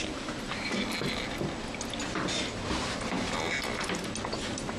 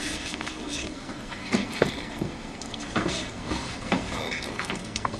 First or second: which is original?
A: first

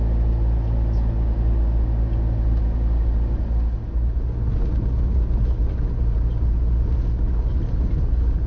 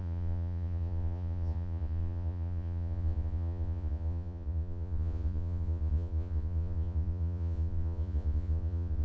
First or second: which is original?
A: first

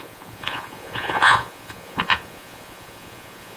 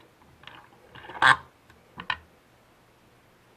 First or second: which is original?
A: second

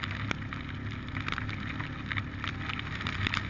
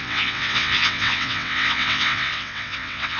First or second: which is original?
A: first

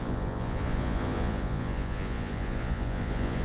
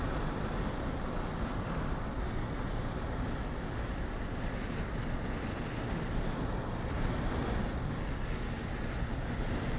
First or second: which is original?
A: second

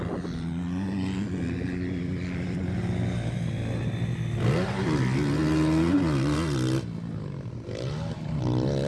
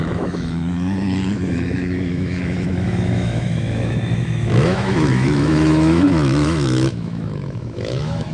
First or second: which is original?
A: first